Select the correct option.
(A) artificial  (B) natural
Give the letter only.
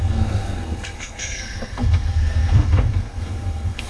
A